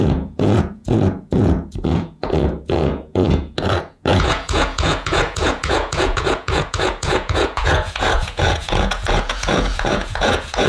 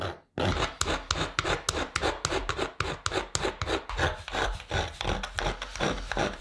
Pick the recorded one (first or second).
second